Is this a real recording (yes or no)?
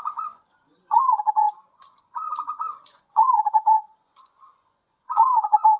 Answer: no